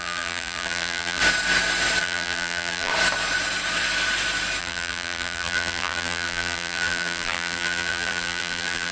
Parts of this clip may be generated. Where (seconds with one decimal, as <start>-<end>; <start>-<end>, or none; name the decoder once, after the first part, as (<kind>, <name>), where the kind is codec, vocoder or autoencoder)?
0.0-1.2 (vocoder, BigVGAN v2); 2.0-2.9; 4.6-8.9